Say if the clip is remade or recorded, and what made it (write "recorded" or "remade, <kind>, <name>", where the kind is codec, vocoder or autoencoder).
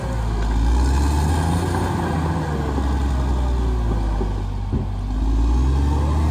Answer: recorded